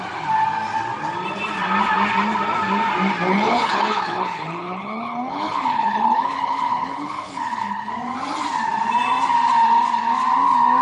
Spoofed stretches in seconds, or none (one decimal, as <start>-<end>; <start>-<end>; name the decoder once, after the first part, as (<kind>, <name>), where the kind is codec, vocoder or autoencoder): 3.3-7.9 (codec, HILCodec)

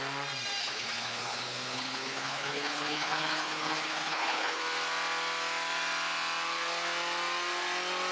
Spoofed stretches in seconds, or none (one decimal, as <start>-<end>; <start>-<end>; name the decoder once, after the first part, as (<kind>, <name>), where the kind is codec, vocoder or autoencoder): 0.6-4.6 (codec, HILCodec)

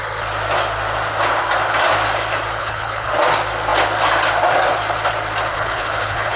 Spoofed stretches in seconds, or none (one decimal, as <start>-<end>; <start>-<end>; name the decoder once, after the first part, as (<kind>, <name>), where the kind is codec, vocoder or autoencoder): 2.6-3.1 (codec, HILCodec); 5.5-6.4

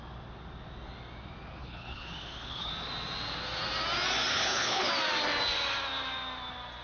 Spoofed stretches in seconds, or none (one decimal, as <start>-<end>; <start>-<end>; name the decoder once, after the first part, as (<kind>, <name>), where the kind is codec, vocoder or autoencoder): 1.6-2.7 (codec, HILCodec); 4.3-4.9

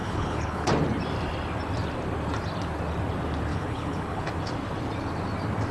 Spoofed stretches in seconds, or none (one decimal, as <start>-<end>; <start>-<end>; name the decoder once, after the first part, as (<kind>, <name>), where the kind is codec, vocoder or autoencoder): 0.0-0.7 (codec, HILCodec); 3.5-4.3

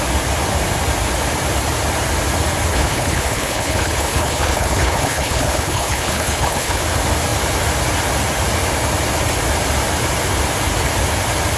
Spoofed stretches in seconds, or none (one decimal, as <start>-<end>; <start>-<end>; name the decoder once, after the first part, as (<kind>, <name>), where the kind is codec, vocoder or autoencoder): 2.7-6.8 (codec, HILCodec)